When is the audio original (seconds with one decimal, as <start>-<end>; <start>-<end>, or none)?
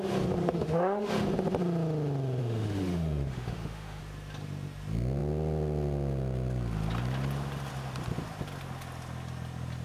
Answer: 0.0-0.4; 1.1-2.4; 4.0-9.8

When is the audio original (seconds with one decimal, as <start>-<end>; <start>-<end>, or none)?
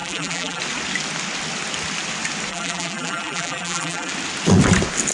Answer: 0.6-2.5; 4.1-5.1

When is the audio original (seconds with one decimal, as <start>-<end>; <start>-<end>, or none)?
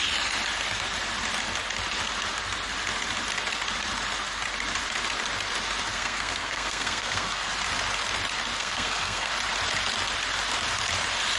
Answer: 0.0-5.9; 7.5-8.6; 9.3-11.4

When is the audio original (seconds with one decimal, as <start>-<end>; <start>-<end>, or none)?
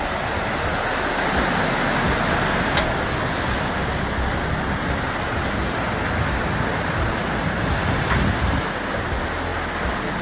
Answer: 0.0-10.2